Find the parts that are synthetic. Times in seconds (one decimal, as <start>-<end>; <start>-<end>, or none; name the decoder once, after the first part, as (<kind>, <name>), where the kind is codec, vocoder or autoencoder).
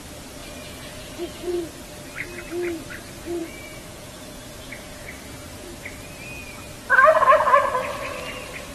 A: 0.4-1.6 (vocoder, Vocos); 3.4-5.1